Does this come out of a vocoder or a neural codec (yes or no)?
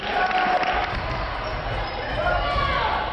no